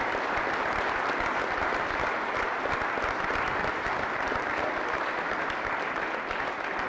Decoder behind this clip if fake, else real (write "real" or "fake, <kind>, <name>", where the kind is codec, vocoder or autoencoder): real